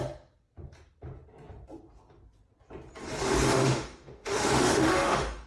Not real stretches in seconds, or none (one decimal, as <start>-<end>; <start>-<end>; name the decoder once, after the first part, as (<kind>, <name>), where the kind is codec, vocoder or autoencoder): 3.5-5.5 (autoencoder, DAC-VAE)